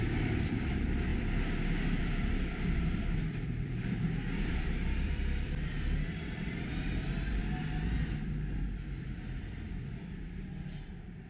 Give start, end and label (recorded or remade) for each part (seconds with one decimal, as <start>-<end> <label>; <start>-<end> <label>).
0.0-1.1 remade; 1.1-2.0 recorded; 2.0-7.4 remade; 7.4-8.6 recorded; 8.6-11.3 remade